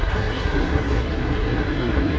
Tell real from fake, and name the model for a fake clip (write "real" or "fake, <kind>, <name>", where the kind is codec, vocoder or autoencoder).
fake, codec, SNAC